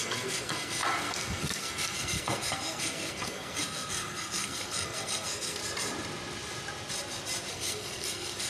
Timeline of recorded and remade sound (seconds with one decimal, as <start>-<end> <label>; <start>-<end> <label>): 0.0-5.6 remade; 5.6-7.5 recorded; 7.5-8.5 remade

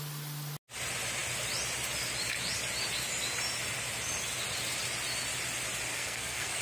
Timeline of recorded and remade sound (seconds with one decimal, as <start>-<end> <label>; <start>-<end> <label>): 0.0-5.9 recorded; 5.9-6.6 remade

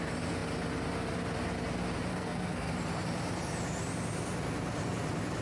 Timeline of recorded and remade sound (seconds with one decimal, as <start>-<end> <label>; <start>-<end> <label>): 0.0-2.1 recorded; 2.1-2.7 remade; 2.7-5.4 recorded

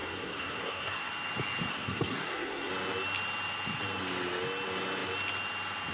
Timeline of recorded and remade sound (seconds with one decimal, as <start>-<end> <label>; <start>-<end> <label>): 0.0-1.1 remade; 1.1-1.7 recorded; 1.7-2.7 remade; 2.7-5.9 recorded

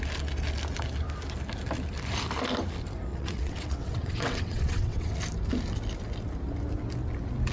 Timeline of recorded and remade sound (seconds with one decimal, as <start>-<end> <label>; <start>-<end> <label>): 0.0-3.1 recorded; 3.1-5.1 remade; 5.1-7.5 recorded